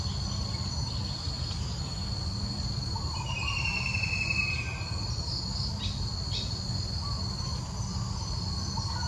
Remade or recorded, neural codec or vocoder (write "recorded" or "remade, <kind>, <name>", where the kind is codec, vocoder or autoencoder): recorded